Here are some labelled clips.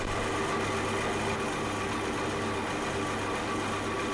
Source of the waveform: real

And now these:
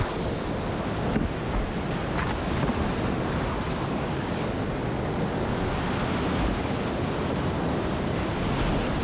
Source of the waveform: real